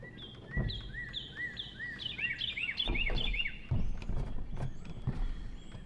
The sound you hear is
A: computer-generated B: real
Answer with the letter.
B